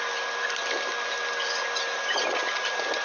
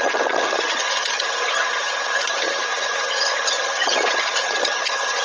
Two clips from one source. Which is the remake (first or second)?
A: second